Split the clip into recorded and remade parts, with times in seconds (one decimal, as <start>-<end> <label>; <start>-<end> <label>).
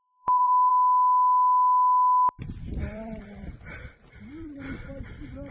0.0-0.7 remade; 0.7-2.3 recorded; 2.3-5.5 remade